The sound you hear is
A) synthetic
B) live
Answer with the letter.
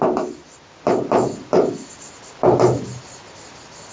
B